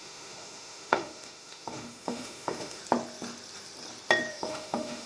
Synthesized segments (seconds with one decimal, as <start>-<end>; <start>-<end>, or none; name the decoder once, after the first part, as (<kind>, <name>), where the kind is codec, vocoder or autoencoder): 0.0-2.8 (autoencoder, DAC-VAE); 4.3-5.1